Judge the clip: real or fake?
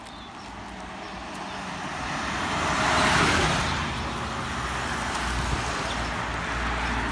real